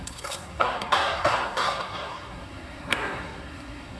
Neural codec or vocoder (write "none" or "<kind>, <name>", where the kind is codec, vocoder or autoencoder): codec, SNAC